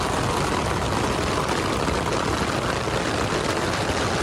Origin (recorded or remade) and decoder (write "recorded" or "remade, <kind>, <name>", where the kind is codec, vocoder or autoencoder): recorded